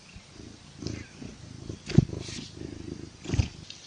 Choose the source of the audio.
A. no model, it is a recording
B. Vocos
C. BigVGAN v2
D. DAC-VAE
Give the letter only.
A